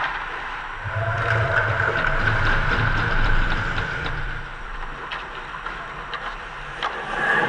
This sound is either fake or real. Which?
fake